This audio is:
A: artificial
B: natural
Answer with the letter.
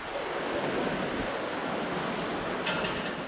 B